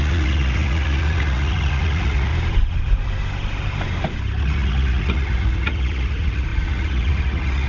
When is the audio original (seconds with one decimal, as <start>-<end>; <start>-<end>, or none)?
2.3-4.4